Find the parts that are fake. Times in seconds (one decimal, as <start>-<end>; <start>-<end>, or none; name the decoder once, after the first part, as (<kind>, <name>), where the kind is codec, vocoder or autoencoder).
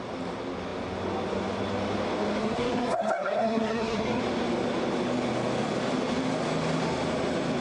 2.4-4.2 (codec, SNAC)